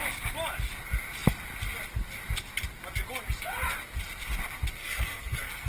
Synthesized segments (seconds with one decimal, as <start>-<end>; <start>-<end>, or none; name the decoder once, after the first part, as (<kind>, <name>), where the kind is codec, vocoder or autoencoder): 4.8-5.7 (codec, SNAC)